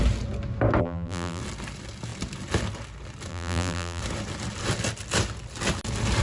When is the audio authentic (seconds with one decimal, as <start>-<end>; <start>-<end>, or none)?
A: 0.0-0.8; 1.4-3.3; 4.0-6.2